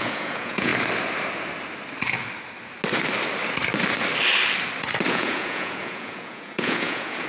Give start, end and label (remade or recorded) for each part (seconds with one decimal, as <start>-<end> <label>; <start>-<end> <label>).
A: 0.0-0.7 remade; 0.7-5.1 recorded; 5.1-7.3 remade